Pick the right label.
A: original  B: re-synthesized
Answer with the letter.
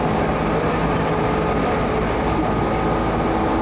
A